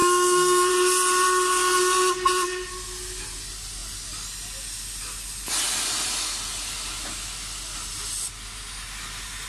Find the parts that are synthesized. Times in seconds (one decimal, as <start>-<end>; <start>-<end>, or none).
0.0-0.7